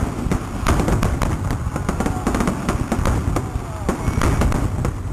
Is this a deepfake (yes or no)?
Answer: no